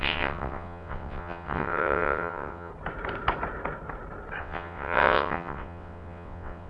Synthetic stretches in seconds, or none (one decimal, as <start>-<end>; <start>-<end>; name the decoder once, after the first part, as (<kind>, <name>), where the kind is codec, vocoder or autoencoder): 0.0-2.7 (vocoder, WaveNeXt); 4.4-6.7